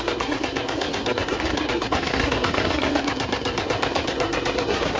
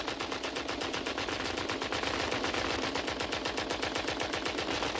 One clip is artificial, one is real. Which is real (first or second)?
second